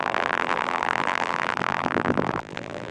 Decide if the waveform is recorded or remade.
remade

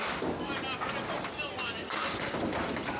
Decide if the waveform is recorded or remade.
recorded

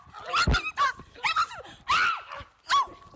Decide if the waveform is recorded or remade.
recorded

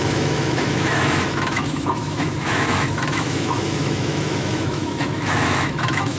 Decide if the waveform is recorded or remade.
remade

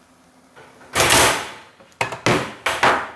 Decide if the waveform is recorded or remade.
recorded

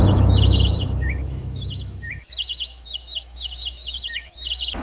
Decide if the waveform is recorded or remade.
remade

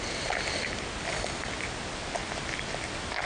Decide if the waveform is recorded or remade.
recorded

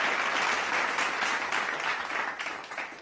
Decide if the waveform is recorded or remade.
recorded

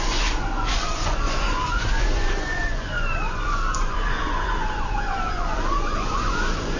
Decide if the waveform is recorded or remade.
remade